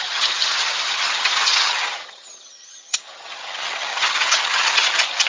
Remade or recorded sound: remade